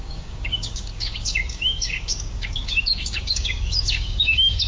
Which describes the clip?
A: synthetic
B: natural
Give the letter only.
A